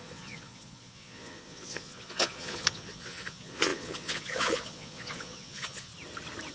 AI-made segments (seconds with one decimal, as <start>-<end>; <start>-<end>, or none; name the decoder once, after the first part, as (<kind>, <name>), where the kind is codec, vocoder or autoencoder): 0.0-5.9 (vocoder, Vocos)